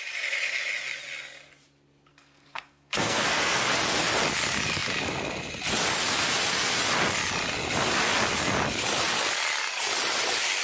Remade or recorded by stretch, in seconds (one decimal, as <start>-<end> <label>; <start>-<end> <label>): 0.0-2.1 recorded; 2.1-3.6 remade; 3.6-10.6 recorded